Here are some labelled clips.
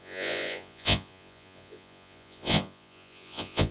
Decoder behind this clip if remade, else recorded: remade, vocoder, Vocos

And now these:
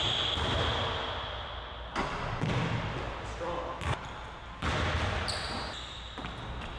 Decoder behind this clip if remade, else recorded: recorded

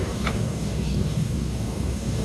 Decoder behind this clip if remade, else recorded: remade, codec, DAC